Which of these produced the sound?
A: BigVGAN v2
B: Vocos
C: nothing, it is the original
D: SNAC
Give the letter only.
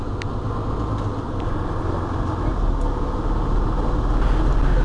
C